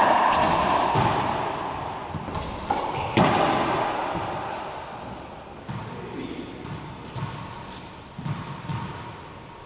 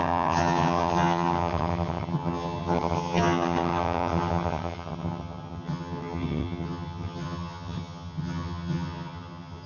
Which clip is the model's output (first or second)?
second